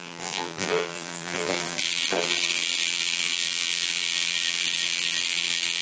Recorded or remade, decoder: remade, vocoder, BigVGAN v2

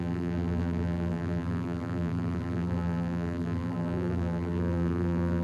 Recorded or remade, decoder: remade, vocoder, BigVGAN v2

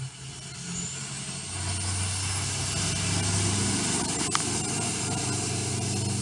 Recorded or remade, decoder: recorded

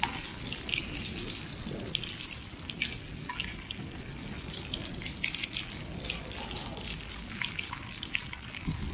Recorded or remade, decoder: recorded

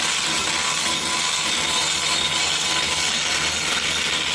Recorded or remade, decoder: recorded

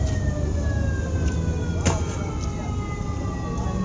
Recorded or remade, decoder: recorded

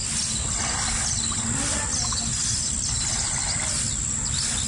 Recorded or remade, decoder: recorded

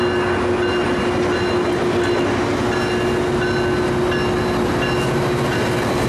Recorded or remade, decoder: recorded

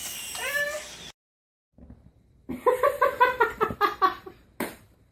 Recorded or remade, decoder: recorded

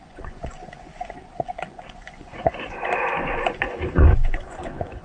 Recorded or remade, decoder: remade, vocoder, Vocos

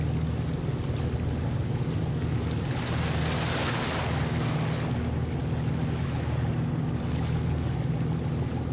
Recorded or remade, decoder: recorded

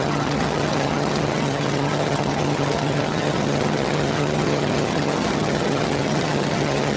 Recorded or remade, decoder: remade, vocoder, HiFi-GAN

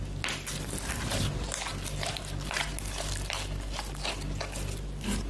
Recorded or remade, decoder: recorded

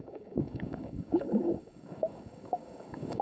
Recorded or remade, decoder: remade, codec, DAC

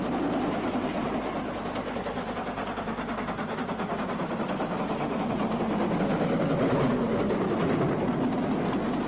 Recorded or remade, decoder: recorded